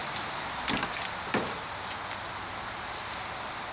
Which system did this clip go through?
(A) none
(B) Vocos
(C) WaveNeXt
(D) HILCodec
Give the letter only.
A